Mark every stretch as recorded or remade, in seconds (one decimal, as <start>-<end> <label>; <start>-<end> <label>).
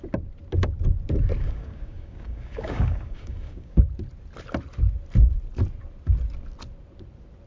0.0-1.4 recorded; 1.4-3.8 remade; 3.8-7.5 recorded